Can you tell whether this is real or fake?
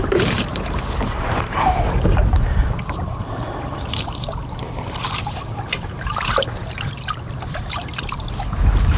fake